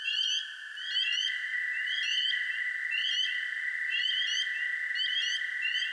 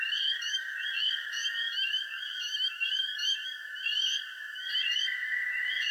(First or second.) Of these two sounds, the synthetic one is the second